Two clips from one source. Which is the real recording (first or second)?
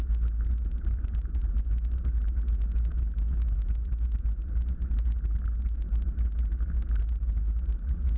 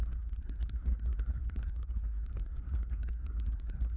first